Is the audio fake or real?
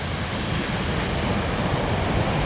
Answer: real